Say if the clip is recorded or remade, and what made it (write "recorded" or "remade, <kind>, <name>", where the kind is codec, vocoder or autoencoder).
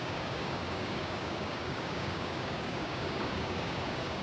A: remade, codec, DAC